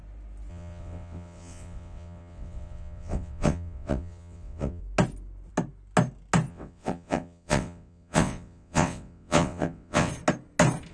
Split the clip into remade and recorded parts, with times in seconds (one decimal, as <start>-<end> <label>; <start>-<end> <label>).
0.0-0.5 recorded; 0.5-4.8 remade; 4.8-6.5 recorded; 6.5-10.1 remade; 10.1-10.9 recorded